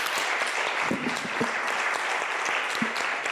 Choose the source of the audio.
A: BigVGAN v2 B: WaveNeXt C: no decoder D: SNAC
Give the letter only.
A